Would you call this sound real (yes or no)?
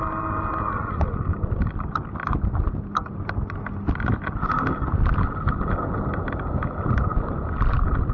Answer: yes